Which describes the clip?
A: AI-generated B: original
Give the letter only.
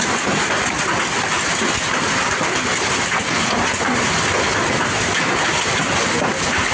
B